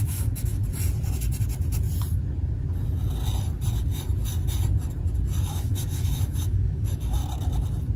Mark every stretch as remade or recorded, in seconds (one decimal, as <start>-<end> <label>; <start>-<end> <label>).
0.0-0.6 remade; 0.6-5.4 recorded; 5.4-7.2 remade; 7.2-8.0 recorded